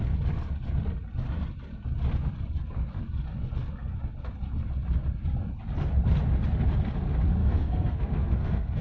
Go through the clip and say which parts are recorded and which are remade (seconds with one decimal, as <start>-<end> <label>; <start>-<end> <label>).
0.0-7.4 recorded; 7.4-8.8 remade